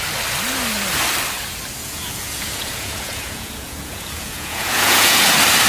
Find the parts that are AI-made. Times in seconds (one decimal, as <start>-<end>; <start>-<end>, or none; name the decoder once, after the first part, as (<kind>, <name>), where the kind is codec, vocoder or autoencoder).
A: 1.8-5.2 (vocoder, Vocos)